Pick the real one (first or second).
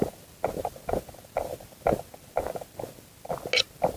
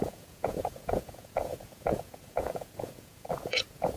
first